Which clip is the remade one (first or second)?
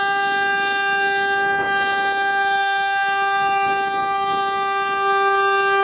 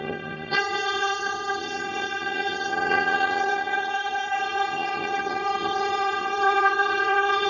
second